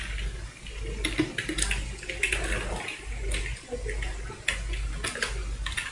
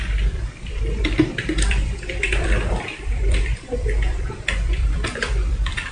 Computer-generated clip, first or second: second